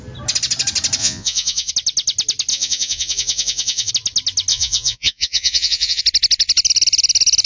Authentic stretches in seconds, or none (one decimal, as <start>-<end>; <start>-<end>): 0.0-1.0; 1.7-2.5; 3.9-4.5; 6.0-7.5